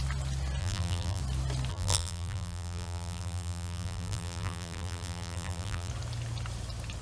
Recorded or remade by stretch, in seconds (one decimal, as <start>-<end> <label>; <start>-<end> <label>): 0.0-0.6 recorded; 0.6-1.2 remade; 1.2-1.7 recorded; 1.7-5.9 remade; 5.9-7.0 recorded